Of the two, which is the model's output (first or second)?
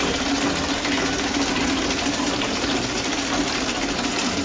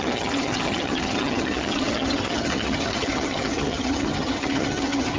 second